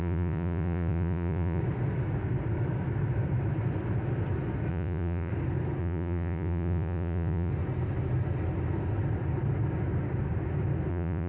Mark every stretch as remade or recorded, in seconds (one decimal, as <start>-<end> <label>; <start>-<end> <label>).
0.0-1.6 remade; 1.6-4.7 recorded; 4.7-5.3 remade; 5.3-5.8 recorded; 5.8-7.5 remade; 7.5-10.9 recorded; 10.9-11.3 remade